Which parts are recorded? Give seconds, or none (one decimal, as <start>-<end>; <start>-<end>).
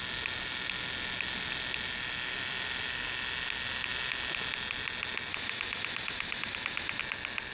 0.0-5.3; 7.0-7.5